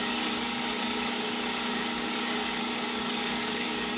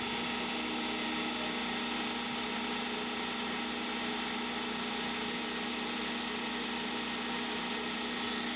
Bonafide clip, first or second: second